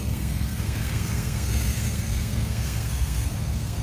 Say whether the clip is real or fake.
fake